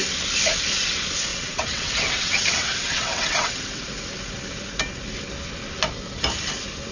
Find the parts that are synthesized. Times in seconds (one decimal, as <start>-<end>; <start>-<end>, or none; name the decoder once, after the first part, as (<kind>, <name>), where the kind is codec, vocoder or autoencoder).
1.3-3.8 (vocoder, WaveNeXt)